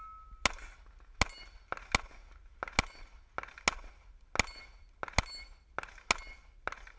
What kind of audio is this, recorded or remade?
recorded